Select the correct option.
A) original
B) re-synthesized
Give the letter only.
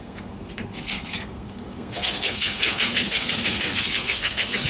B